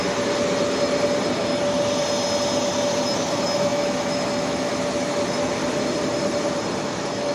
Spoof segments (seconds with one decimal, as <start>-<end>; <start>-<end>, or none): 3.0-5.6; 6.8-7.3